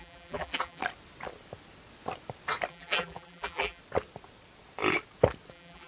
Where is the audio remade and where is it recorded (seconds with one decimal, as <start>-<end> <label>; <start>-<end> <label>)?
0.0-0.8 remade; 0.8-2.7 recorded; 2.7-3.8 remade; 3.8-5.5 recorded; 5.5-5.9 remade